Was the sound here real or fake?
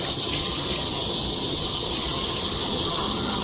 fake